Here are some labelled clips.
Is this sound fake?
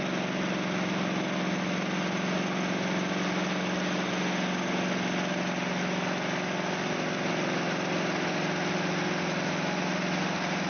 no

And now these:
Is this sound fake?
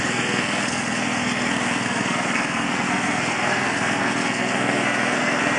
yes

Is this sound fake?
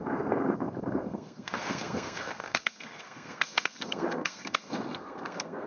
yes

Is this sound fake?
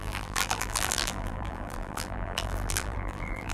yes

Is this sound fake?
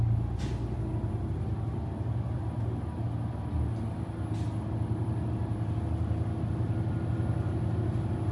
no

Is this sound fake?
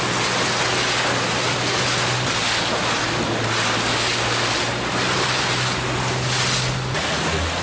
no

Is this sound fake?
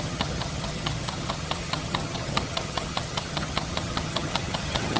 yes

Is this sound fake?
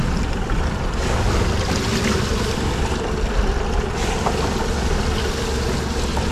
no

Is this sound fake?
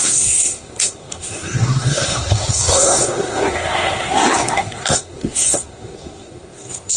yes